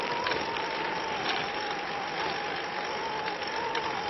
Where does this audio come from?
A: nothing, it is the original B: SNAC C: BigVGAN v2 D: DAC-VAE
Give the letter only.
A